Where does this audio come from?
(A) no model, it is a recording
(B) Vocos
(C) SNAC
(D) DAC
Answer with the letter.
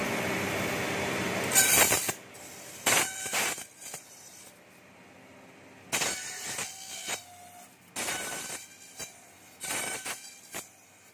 A